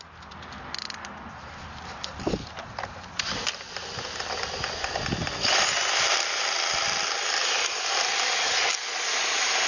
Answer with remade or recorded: recorded